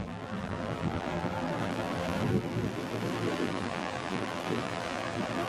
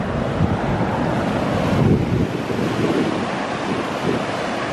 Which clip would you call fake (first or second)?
first